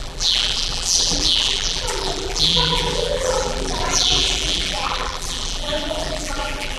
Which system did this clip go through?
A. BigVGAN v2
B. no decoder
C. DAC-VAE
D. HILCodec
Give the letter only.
A